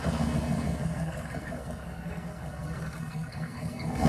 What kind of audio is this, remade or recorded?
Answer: remade